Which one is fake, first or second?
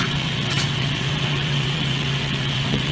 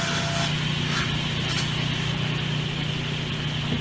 first